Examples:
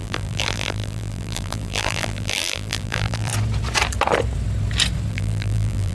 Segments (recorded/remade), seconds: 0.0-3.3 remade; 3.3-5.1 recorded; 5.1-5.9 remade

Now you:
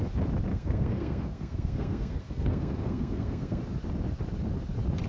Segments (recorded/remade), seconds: 0.0-0.5 recorded; 0.5-3.6 remade; 3.6-5.1 recorded